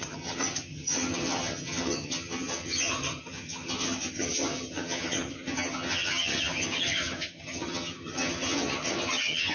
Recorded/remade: remade